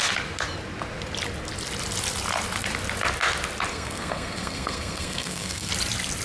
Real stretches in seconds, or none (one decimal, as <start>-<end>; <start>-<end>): 0.0-3.7; 5.7-6.2